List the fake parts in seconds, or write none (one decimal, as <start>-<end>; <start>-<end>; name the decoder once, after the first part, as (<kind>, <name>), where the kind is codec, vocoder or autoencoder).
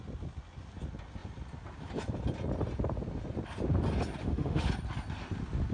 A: 4.2-4.7 (autoencoder, DAC-VAE)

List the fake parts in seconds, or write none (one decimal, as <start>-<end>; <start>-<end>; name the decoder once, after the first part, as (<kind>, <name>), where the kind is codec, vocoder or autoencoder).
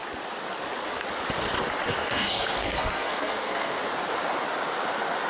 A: 2.0-3.8 (codec, SNAC)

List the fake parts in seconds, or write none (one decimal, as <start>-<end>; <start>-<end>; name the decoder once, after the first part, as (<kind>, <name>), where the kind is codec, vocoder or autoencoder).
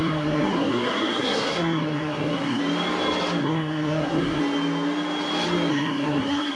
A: 0.0-2.6 (codec, SNAC); 3.4-4.4; 5.7-6.6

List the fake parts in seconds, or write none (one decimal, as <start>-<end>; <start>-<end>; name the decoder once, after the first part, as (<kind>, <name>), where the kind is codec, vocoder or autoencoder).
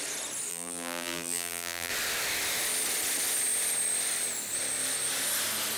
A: 0.5-1.9 (vocoder, BigVGAN v2)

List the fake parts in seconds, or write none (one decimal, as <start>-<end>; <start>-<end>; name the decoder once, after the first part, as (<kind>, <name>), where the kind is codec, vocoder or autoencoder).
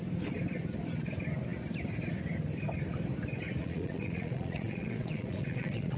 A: 3.6-6.0 (vocoder, Vocos)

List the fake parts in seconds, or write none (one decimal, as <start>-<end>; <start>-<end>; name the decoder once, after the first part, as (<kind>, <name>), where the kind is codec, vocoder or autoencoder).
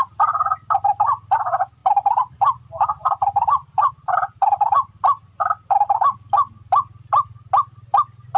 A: none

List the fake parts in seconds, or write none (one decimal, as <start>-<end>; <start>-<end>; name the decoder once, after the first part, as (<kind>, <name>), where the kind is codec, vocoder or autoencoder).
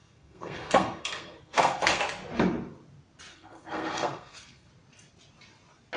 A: 0.0-2.0 (codec, SNAC); 3.3-4.7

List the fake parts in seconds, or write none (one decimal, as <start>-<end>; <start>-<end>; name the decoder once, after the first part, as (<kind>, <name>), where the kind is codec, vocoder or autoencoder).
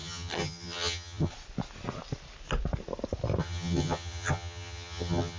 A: 0.0-1.3 (vocoder, HiFi-GAN); 3.4-5.4